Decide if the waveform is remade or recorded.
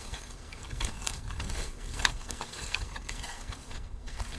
remade